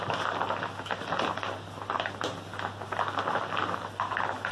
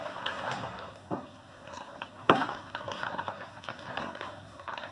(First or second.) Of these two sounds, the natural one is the first